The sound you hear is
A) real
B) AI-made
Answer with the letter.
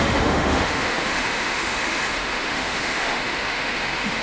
B